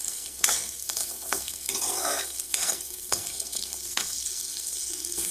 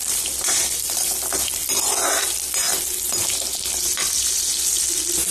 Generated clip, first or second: first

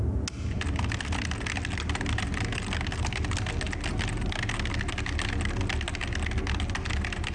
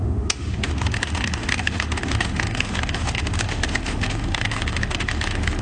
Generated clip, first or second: second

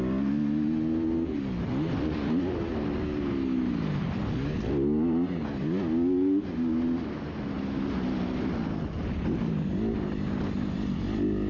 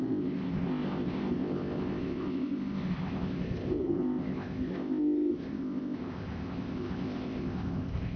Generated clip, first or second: second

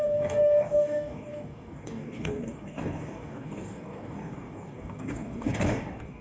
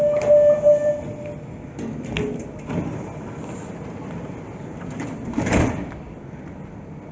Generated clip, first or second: first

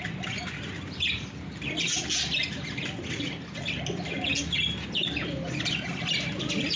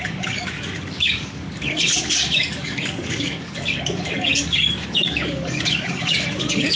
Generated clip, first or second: second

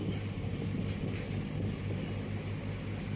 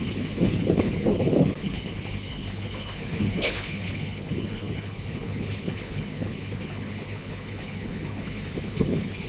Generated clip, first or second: second